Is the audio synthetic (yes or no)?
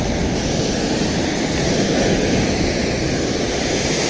no